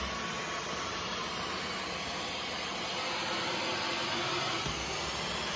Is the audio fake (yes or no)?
no